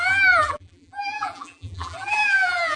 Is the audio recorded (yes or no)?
no